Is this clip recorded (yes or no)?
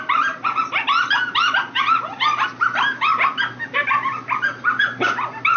yes